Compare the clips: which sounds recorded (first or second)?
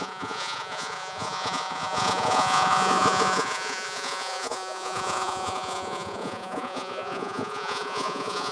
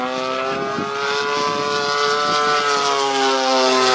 second